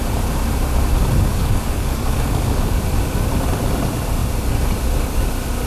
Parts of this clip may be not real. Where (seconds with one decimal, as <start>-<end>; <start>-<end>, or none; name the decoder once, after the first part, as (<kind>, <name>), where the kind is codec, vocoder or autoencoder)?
1.3-2.8 (codec, DAC)